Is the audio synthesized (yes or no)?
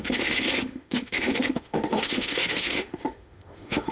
yes